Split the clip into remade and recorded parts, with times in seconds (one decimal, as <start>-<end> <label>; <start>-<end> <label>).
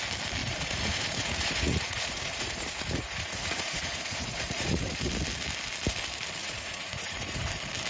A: 0.0-0.4 recorded; 0.4-5.1 remade; 5.1-6.4 recorded; 6.4-7.5 remade; 7.5-7.9 recorded